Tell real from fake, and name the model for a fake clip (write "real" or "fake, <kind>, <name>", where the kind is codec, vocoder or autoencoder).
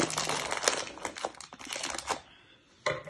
real